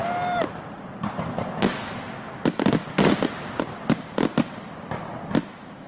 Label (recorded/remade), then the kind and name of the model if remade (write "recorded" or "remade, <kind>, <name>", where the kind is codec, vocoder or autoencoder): recorded